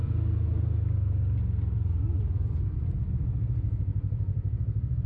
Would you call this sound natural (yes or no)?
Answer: yes